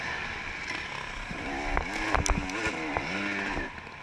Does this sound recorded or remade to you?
recorded